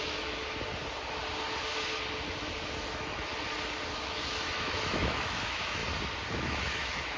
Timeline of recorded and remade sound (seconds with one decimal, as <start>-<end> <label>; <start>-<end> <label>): 0.0-0.4 remade; 0.4-2.9 recorded; 2.9-3.3 remade; 3.3-3.9 recorded; 3.9-5.8 remade; 5.8-6.3 recorded; 6.3-7.2 remade